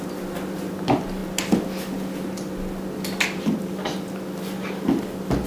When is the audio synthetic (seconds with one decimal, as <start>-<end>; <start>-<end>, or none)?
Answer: none